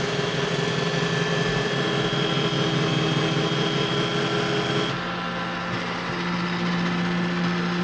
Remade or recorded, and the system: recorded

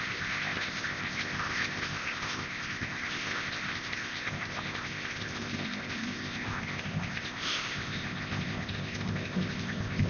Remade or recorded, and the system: remade, codec, ZipCodec